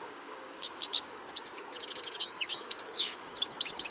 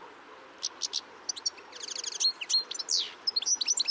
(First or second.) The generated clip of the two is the first